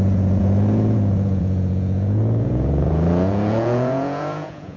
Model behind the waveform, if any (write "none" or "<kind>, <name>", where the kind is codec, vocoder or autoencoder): vocoder, Vocos